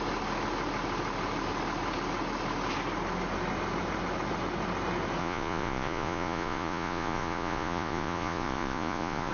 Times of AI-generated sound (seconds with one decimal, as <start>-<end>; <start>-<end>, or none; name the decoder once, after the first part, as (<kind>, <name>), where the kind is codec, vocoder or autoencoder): 5.2-9.3 (vocoder, Vocos)